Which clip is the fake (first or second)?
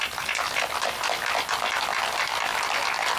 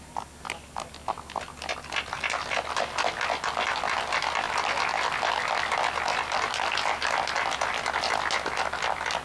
first